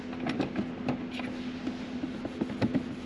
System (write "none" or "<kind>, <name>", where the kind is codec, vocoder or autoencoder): none